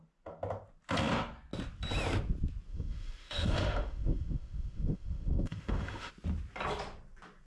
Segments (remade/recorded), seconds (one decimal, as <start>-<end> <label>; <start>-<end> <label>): 0.0-2.7 recorded; 2.7-6.1 remade; 6.1-7.5 recorded